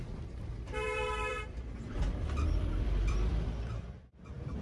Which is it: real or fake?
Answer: fake